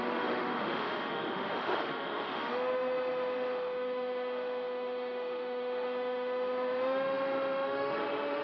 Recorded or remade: remade